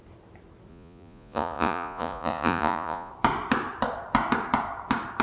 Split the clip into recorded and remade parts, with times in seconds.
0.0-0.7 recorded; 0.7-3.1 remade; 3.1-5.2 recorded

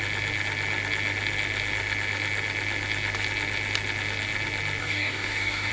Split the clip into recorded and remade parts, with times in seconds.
0.0-4.8 recorded; 4.8-5.7 remade

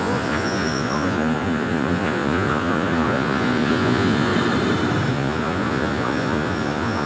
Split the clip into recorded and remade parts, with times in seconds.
0.0-4.3 remade; 4.3-5.1 recorded; 5.1-7.1 remade

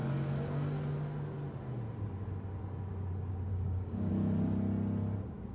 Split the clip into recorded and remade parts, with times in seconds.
0.0-3.5 recorded; 3.5-4.1 remade; 4.1-5.5 recorded

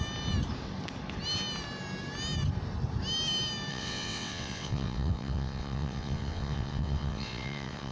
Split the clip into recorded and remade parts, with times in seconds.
0.0-3.7 recorded; 3.7-7.9 remade

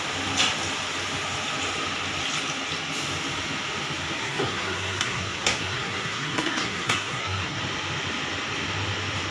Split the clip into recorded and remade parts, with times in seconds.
0.0-4.2 recorded; 4.2-7.6 remade; 7.6-9.3 recorded

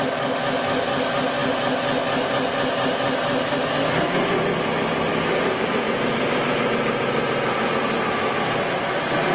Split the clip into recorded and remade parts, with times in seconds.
0.0-5.1 recorded; 5.1-5.7 remade; 5.7-9.3 recorded

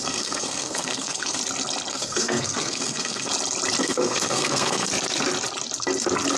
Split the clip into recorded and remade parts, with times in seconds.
0.0-1.4 remade; 1.4-1.9 recorded; 1.9-3.3 remade; 3.3-3.8 recorded; 3.8-4.9 remade; 4.9-6.4 recorded